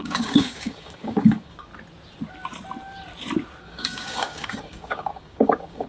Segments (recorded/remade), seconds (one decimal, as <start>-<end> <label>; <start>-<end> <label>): 0.0-1.7 remade; 1.7-3.6 recorded; 3.6-5.9 remade